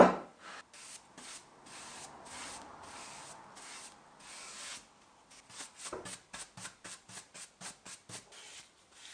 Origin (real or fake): real